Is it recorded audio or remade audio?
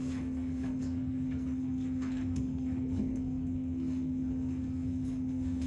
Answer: remade